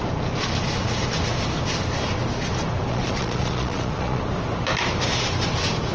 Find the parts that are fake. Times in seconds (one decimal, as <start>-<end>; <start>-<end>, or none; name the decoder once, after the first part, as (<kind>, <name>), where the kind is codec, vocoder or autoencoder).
2.9-4.2 (vocoder, Vocos)